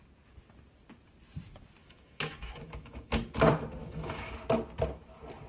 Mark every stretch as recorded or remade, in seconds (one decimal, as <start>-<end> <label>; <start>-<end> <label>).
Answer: 0.0-1.8 recorded; 1.8-3.3 remade; 3.3-3.8 recorded; 3.8-4.3 remade; 4.3-5.5 recorded

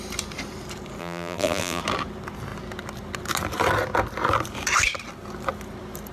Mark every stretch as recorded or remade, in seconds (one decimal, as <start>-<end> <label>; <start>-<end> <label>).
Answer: 0.0-1.0 recorded; 1.0-1.8 remade; 1.8-6.1 recorded

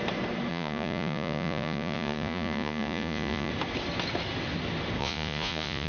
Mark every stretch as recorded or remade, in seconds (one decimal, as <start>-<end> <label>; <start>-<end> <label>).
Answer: 0.0-0.5 recorded; 0.5-3.5 remade; 3.5-5.0 recorded; 5.0-5.9 remade

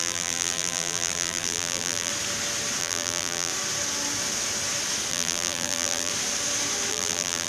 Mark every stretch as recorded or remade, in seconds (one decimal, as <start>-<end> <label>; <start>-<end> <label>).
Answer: 0.0-2.1 remade; 2.1-2.8 recorded; 2.8-3.5 remade; 3.5-5.1 recorded; 5.1-6.1 remade; 6.1-6.9 recorded; 6.9-7.5 remade

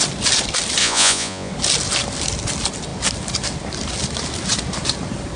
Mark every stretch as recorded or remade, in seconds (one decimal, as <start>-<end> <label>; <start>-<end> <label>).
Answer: 0.0-0.8 recorded; 0.8-1.5 remade; 1.5-5.4 recorded